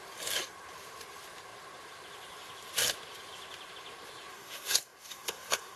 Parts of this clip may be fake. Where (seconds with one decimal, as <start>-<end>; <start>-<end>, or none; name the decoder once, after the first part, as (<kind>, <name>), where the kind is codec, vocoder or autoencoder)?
4.3-5.8 (codec, SNAC)